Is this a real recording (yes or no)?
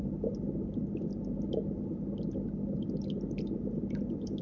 yes